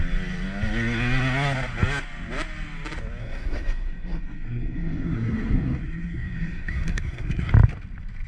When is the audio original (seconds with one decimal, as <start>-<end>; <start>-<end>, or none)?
0.0-3.2; 7.5-8.3